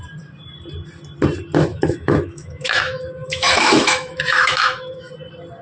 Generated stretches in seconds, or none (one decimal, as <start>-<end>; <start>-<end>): 1.7-5.1

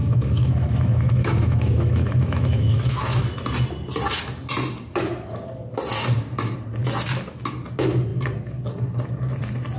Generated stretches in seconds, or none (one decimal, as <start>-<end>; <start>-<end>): 0.0-3.2